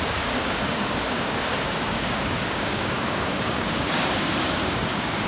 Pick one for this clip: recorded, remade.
remade